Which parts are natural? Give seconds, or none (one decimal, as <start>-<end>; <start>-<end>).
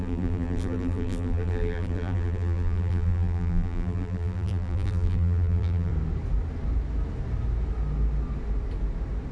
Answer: 5.9-9.3